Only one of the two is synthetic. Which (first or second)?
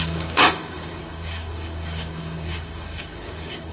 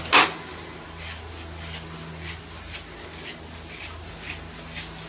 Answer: first